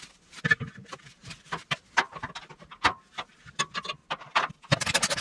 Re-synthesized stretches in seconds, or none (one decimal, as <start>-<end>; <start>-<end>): none